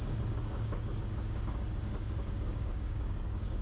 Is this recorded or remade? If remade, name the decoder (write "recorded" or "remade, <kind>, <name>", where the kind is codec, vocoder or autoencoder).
remade, codec, DAC